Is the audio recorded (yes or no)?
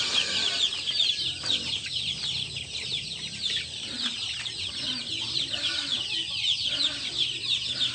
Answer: yes